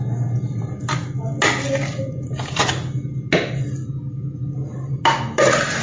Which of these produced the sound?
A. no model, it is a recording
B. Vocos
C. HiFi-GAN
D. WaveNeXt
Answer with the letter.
A